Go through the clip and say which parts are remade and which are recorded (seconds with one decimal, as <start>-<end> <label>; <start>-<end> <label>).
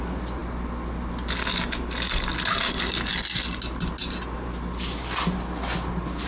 0.0-6.3 recorded